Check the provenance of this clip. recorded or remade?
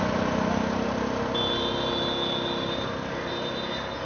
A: recorded